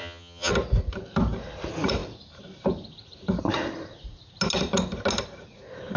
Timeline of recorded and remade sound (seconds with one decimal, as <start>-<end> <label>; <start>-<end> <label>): 0.0-0.5 remade; 0.5-6.0 recorded